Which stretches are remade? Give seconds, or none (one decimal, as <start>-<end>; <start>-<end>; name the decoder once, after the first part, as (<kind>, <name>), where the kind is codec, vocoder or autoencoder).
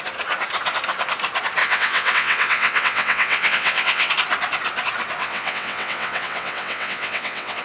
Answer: 1.6-4.1 (vocoder, WaveNeXt); 5.2-7.6